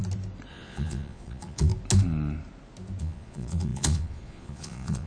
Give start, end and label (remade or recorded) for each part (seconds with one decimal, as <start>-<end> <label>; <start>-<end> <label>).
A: 0.0-0.5 recorded; 0.5-1.7 remade; 1.7-3.0 recorded; 3.0-5.1 remade